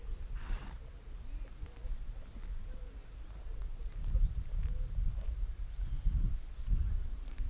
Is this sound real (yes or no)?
yes